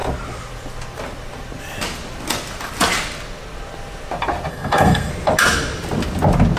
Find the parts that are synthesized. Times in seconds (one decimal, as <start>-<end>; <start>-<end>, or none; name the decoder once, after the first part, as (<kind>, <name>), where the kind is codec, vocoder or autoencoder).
4.5-5.1 (codec, SNAC)